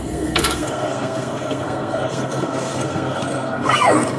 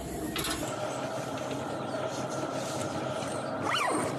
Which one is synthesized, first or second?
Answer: first